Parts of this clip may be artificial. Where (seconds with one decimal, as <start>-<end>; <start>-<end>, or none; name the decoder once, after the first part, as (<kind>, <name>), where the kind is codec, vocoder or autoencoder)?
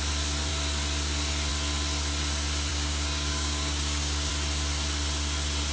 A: 2.7-4.3 (codec, DAC)